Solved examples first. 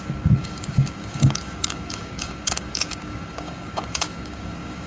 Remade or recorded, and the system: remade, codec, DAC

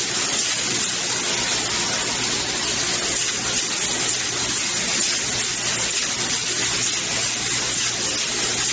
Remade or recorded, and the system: recorded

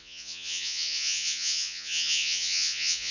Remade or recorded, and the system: remade, vocoder, Vocos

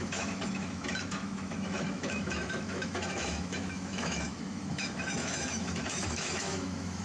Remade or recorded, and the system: remade, autoencoder, DAC-VAE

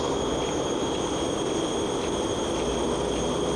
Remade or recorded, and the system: recorded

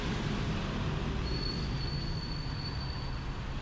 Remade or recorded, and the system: recorded